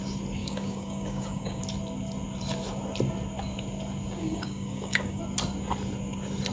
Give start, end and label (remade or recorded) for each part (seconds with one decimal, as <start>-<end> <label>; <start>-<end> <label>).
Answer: 0.0-0.4 recorded; 0.4-1.6 remade; 1.6-4.2 recorded; 4.2-5.2 remade; 5.2-6.5 recorded